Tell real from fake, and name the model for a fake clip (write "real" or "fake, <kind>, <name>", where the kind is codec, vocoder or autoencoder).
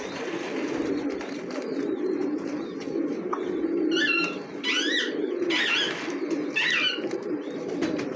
real